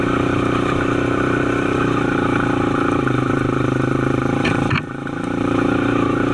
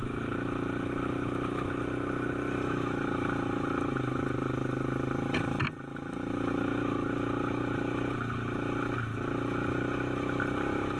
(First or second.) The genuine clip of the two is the second